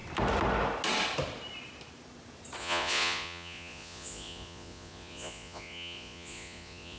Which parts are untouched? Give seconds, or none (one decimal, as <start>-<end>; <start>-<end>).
0.0-2.6

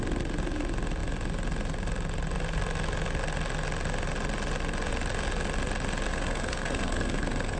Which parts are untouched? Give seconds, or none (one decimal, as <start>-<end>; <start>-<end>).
0.0-6.1

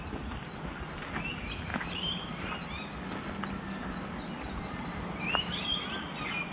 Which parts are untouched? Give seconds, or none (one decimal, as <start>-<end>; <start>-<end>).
0.0-1.7; 2.3-6.5